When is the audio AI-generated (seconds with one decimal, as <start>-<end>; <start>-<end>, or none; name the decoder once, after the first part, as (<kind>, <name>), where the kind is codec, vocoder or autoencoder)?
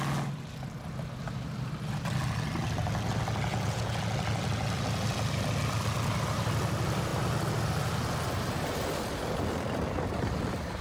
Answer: 3.5-4.0 (vocoder, Vocos)